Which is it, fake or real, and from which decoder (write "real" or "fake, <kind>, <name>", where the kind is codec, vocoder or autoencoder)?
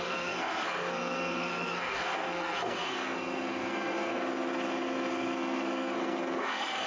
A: fake, codec, SNAC